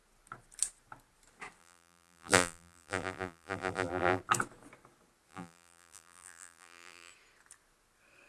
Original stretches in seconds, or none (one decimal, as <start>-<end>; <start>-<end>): 0.0-1.6; 4.2-5.3; 7.1-8.3